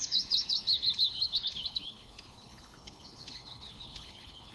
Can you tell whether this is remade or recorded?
remade